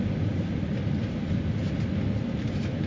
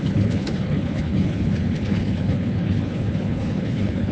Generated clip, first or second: second